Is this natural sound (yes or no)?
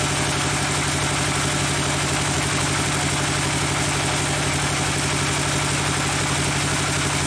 yes